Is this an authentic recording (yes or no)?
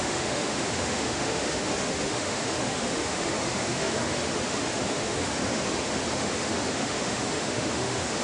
no